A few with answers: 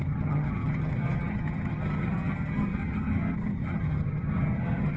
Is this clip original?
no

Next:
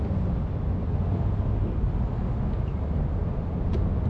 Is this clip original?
yes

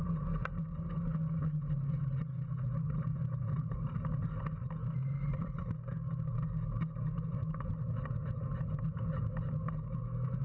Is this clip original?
yes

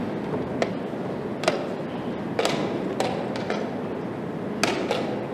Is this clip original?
yes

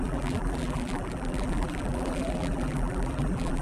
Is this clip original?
no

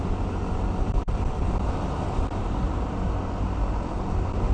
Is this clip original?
yes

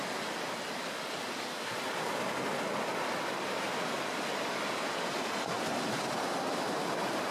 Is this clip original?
yes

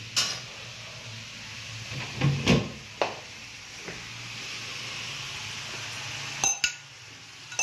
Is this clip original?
yes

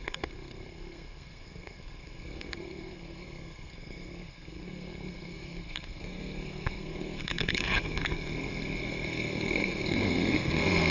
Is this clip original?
no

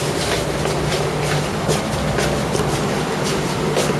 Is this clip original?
no